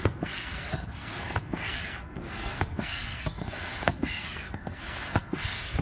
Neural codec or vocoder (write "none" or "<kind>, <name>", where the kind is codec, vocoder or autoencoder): codec, SNAC